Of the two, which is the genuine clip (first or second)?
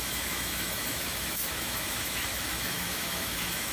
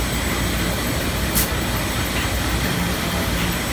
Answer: second